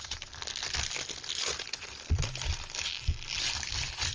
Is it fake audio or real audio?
real